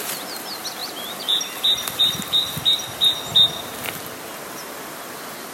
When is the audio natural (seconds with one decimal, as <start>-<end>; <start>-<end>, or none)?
0.0-0.8; 1.4-5.5